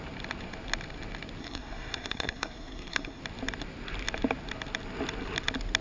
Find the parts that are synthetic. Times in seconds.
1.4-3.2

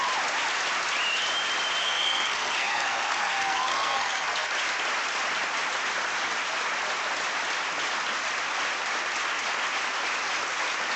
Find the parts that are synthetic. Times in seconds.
1.8-4.5

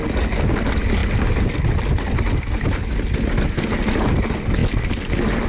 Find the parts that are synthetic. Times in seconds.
none

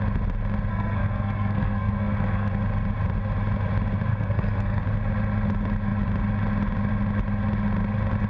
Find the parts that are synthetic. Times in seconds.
0.7-2.5; 4.1-4.8

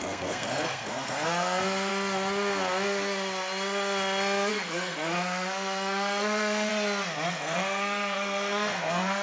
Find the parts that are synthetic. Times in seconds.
0.0-1.9; 4.5-6.7; 7.3-9.2